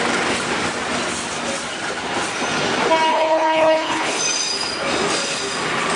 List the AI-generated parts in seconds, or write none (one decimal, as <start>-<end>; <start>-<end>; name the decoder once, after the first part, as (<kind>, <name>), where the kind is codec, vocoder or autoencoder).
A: 3.1-4.2 (codec, HILCodec)